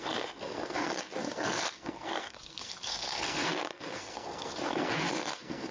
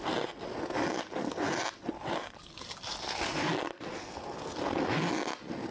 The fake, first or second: first